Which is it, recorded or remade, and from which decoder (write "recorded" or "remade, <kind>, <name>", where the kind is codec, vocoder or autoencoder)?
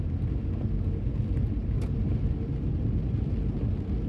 recorded